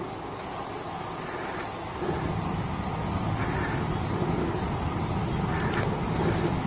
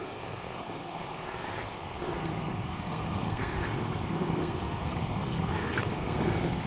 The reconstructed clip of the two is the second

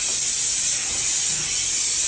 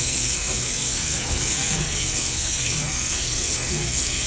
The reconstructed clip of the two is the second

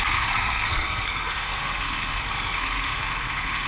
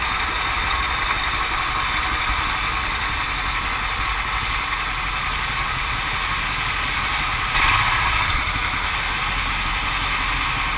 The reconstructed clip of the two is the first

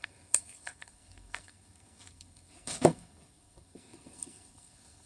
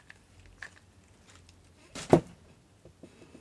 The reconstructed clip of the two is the first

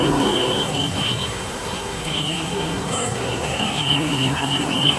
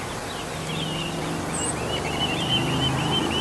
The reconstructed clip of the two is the first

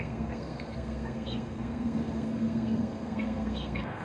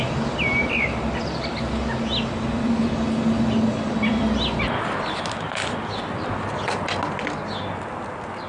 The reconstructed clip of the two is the first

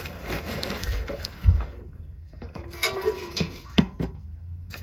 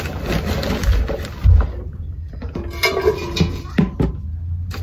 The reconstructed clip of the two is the first